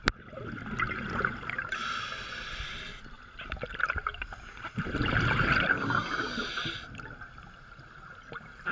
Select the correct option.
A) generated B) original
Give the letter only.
B